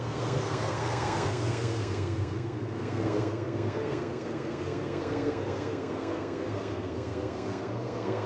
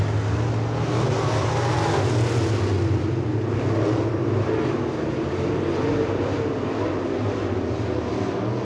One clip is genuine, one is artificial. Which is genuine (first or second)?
second